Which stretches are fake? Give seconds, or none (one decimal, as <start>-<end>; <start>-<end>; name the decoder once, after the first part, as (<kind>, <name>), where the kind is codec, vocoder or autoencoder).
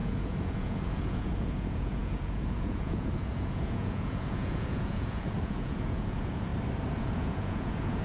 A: 0.0-6.5 (vocoder, Vocos); 7.0-8.0